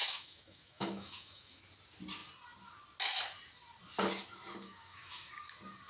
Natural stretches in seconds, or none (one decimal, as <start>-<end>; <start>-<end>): 1.6-4.6; 5.3-5.9